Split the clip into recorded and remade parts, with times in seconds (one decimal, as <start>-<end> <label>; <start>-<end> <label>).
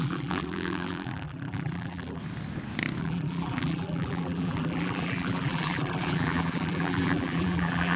0.0-2.2 remade; 2.2-3.0 recorded; 3.0-8.0 remade